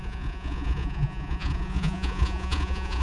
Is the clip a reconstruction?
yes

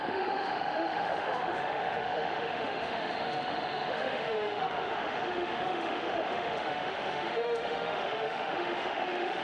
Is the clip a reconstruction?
yes